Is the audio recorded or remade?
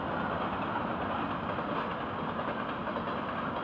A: recorded